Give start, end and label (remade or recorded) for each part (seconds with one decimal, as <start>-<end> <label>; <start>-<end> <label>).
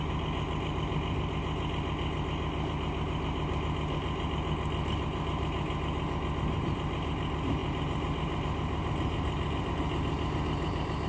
0.0-11.1 recorded